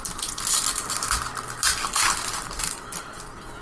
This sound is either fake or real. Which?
real